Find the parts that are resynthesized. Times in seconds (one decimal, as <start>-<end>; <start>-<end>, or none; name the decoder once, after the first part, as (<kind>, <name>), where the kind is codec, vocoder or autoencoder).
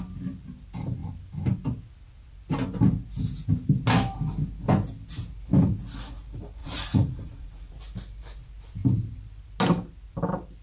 6.6-7.7 (vocoder, Vocos)